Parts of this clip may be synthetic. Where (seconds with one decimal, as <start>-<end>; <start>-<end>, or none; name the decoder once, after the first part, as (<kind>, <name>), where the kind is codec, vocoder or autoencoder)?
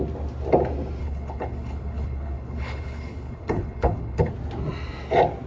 1.0-4.3 (codec, HILCodec)